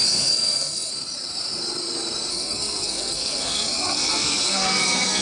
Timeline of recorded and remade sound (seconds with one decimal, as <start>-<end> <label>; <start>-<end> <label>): 0.0-0.9 remade; 0.9-2.3 recorded; 2.3-5.2 remade